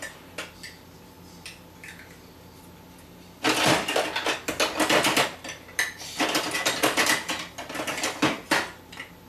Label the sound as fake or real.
real